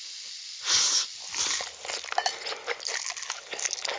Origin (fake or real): real